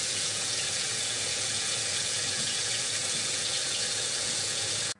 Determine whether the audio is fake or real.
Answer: fake